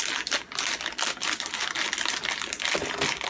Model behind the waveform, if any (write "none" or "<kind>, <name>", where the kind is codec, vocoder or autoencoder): none